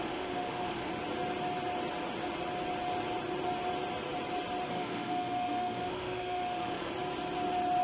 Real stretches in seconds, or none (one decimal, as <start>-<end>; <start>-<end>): 0.9-4.7; 6.9-7.8